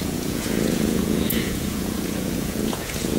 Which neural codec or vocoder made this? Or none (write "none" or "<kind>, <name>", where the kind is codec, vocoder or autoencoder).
vocoder, Vocos